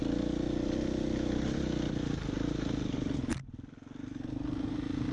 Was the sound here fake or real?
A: real